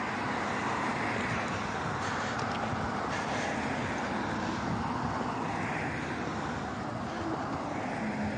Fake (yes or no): no